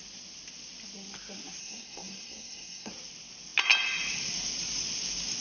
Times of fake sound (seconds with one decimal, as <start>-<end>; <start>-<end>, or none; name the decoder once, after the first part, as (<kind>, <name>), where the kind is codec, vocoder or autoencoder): 1.6-2.9 (codec, SNAC)